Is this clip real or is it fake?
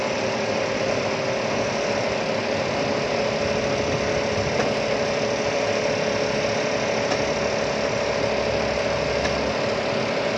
real